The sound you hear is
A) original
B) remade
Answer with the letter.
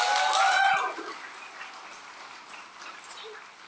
A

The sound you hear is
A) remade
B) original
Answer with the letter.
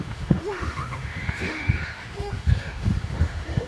A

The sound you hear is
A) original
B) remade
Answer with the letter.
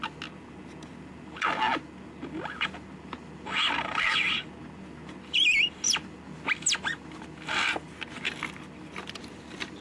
A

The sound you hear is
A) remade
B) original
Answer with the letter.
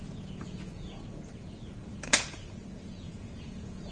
A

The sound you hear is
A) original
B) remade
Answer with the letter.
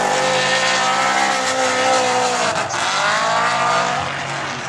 A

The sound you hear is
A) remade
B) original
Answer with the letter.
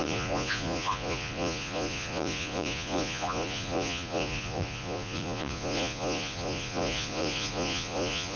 A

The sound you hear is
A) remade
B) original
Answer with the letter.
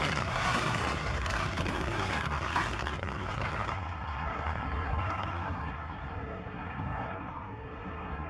A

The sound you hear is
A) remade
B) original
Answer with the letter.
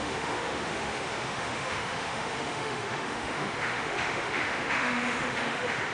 A